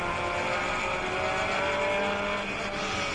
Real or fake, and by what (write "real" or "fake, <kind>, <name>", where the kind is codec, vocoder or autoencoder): real